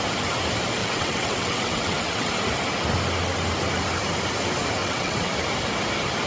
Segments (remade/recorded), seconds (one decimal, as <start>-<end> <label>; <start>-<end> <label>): 0.0-0.8 recorded; 0.8-2.3 remade; 2.3-4.8 recorded; 4.8-5.3 remade; 5.3-6.3 recorded